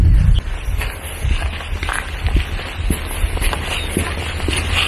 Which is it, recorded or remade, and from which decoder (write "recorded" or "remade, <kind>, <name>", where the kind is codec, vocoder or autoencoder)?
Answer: recorded